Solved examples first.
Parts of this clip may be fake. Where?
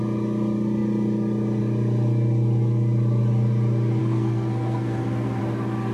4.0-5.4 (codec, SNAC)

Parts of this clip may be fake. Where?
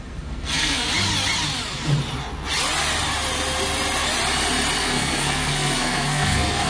0.0-0.9 (codec, SNAC); 4.8-6.7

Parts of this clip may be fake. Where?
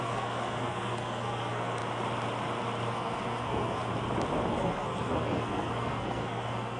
0.0-1.8 (codec, SNAC); 2.9-3.8; 4.5-6.8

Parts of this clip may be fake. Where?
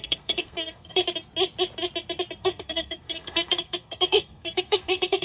0.0-1.0 (codec, SNAC); 2.4-5.2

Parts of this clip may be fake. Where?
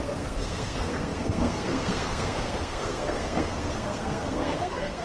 0.0-5.0 (codec, SNAC)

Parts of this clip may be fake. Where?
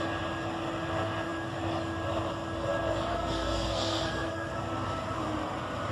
3.1-4.6 (codec, SNAC)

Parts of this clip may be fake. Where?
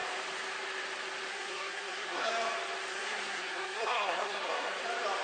1.3-2.3 (codec, SNAC); 2.9-4.8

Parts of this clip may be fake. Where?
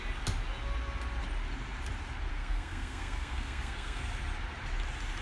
2.3-4.0 (codec, SNAC)